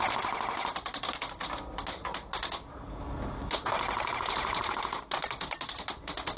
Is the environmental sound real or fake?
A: real